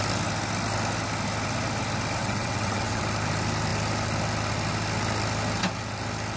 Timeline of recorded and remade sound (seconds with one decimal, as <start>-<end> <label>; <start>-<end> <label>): 0.0-2.2 recorded; 2.2-3.0 remade; 3.0-6.4 recorded